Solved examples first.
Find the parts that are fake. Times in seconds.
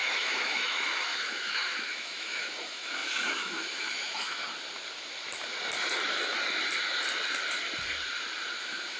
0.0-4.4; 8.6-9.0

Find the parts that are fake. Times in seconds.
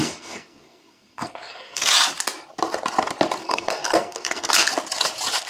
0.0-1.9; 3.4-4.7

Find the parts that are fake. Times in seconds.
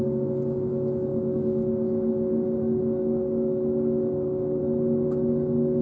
1.1-4.6